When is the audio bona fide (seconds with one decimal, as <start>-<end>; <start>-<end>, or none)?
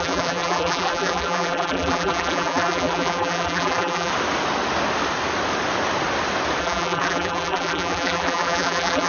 4.1-6.6